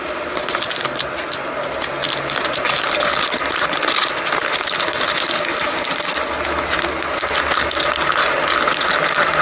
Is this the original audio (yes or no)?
yes